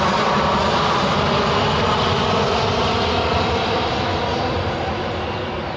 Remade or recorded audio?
recorded